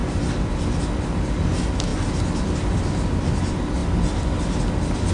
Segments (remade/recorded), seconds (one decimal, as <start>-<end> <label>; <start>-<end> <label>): 0.0-0.8 remade; 0.8-1.9 recorded; 1.9-2.8 remade; 2.8-5.1 recorded